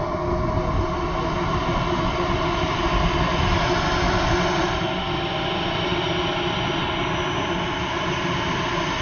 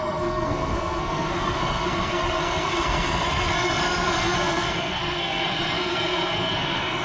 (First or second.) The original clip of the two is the first